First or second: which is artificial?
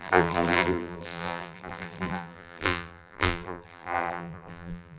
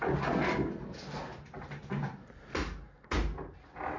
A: first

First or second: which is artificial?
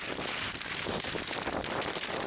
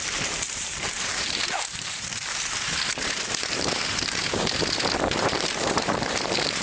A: second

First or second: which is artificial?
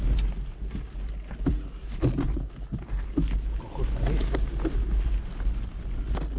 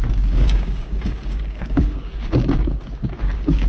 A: second